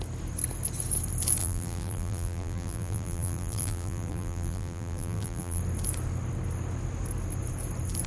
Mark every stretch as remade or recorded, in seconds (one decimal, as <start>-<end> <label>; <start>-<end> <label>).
0.0-1.4 recorded; 1.4-5.6 remade; 5.6-8.1 recorded